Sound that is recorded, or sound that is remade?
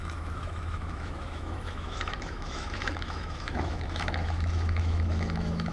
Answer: remade